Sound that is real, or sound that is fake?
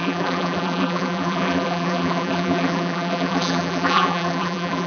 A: fake